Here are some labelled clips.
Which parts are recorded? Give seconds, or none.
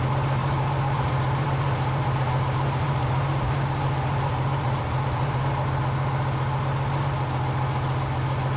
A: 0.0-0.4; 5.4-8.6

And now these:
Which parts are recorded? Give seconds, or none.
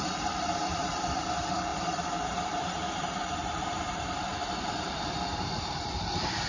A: none